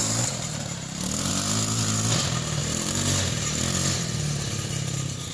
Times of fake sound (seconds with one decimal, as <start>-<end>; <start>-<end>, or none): 0.0-1.3; 2.6-3.6